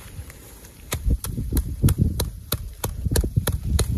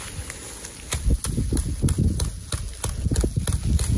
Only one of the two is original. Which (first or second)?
second